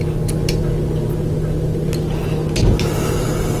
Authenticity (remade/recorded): recorded